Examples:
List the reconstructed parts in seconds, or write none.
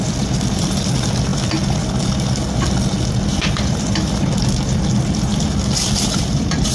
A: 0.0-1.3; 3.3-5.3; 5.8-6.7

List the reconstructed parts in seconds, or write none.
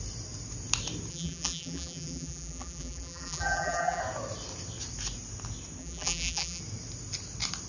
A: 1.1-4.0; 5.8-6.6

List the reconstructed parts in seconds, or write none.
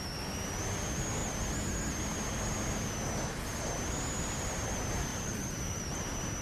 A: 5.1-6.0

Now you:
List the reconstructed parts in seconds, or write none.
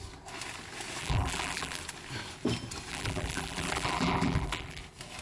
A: 1.0-1.8; 2.9-4.8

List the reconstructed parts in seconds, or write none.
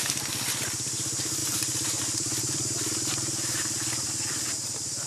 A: 0.0-1.4; 2.0-5.1